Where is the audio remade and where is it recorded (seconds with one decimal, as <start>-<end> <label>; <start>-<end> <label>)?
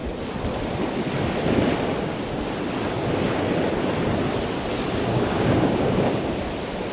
0.0-5.0 recorded; 5.0-6.3 remade; 6.3-6.9 recorded